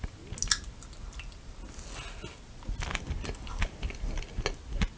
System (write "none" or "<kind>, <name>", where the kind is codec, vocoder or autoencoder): none